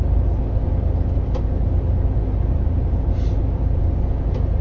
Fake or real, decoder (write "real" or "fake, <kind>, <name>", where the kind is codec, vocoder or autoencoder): real